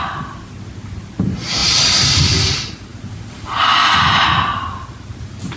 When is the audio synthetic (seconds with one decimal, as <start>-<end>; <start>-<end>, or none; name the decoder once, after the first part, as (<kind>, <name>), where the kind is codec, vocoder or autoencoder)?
none